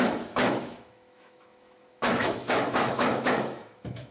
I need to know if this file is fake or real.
fake